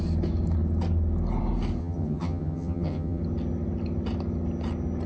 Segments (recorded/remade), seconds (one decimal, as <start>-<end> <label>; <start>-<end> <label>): 0.0-1.8 recorded; 1.8-3.2 remade; 3.2-5.1 recorded